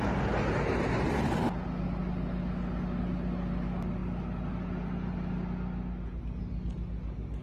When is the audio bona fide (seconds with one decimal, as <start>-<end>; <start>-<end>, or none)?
0.0-7.4